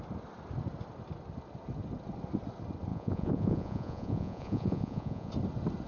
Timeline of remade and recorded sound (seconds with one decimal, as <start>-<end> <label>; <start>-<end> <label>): 0.0-2.9 recorded; 2.9-5.3 remade; 5.3-5.9 recorded